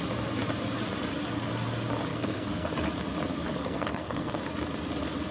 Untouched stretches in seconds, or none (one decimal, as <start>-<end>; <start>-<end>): 0.0-2.1; 2.7-3.3; 4.4-5.3